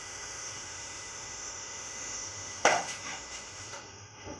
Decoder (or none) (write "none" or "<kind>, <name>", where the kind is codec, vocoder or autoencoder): autoencoder, DAC-VAE